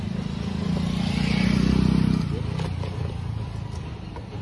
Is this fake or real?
real